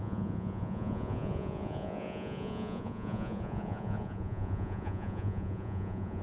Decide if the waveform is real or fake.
fake